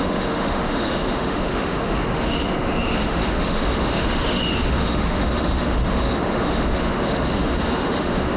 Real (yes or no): no